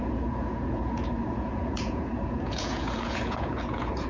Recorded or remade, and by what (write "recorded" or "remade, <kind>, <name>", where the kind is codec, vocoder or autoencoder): remade, vocoder, Vocos